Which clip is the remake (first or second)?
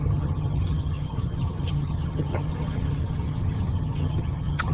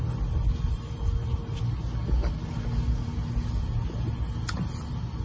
first